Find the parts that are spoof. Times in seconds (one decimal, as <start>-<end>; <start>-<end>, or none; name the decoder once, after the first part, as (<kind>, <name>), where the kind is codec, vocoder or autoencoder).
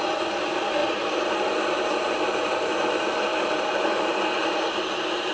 none